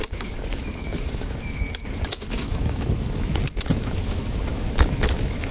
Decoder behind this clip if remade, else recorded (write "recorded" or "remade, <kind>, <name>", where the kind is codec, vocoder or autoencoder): remade, autoencoder, DAC-VAE